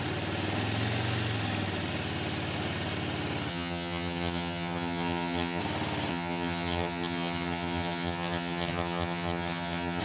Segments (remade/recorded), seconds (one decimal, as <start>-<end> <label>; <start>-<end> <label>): 0.0-3.5 recorded; 3.5-5.6 remade; 5.6-6.1 recorded; 6.1-10.0 remade